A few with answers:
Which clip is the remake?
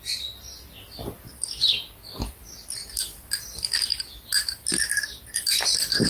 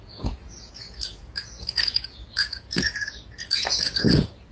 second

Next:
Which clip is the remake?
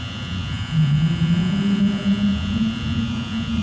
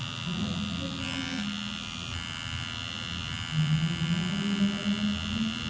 first